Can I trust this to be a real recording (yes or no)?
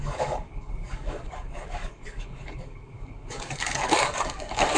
no